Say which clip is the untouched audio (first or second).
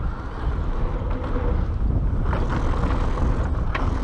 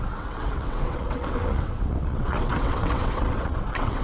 first